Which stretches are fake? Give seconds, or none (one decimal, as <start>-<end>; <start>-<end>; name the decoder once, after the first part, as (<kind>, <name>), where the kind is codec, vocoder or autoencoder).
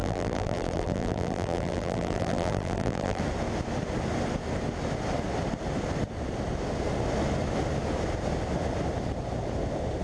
0.0-3.2 (vocoder, BigVGAN v2)